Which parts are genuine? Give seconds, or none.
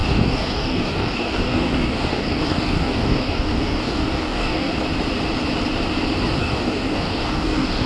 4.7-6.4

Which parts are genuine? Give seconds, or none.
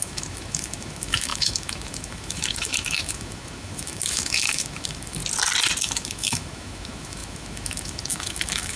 5.2-5.8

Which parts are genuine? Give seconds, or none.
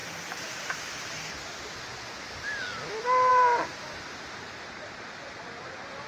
1.6-3.3; 5.4-6.1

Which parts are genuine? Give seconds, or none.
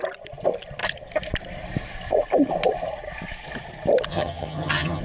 0.0-4.1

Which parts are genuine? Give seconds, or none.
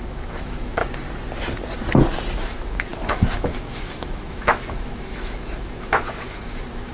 0.8-2.4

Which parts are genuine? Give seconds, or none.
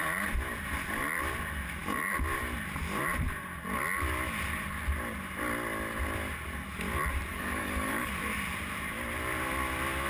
0.0-7.3; 8.1-10.1